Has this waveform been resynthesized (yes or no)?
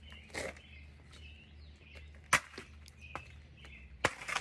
no